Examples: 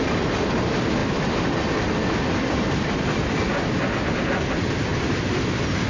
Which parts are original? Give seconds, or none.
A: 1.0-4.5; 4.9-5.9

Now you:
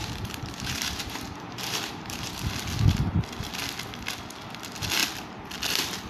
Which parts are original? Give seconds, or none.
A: 2.5-6.1

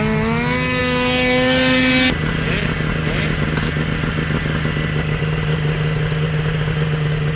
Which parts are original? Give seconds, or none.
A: 0.0-7.4